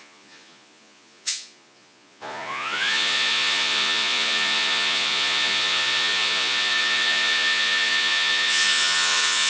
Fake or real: fake